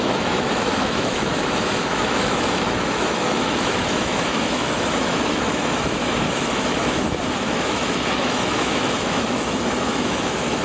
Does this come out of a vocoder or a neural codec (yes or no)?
yes